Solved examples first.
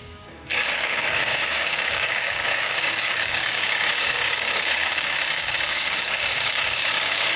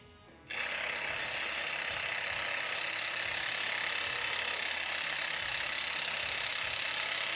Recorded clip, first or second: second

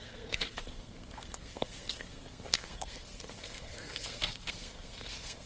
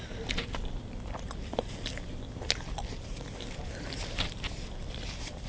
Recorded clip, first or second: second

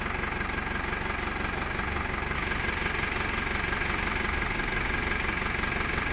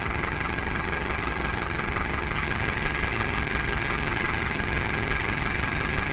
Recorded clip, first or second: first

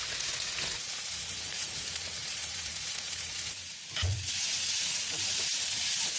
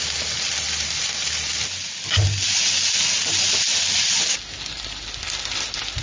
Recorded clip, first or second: second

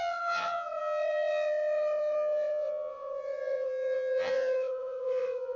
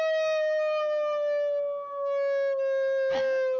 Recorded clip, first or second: second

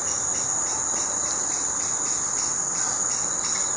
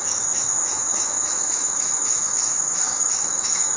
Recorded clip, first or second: first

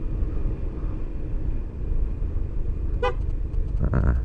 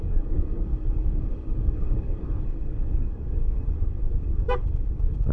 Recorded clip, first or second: first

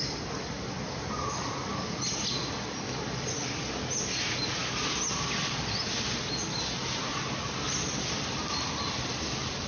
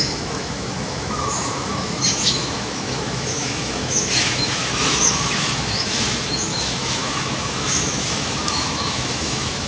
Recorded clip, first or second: first